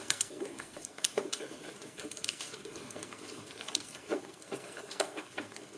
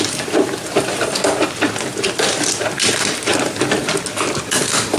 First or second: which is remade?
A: first